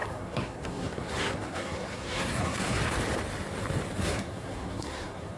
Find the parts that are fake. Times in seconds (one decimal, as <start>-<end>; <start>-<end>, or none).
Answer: 0.0-2.8; 4.0-5.4